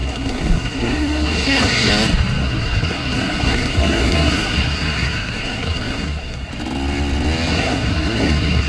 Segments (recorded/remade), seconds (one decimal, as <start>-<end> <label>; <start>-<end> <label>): 0.0-1.9 remade; 1.9-2.4 recorded; 2.4-6.5 remade; 6.5-7.5 recorded; 7.5-8.7 remade